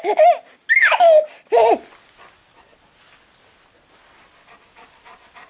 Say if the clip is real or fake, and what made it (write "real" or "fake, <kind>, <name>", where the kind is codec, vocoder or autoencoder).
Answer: real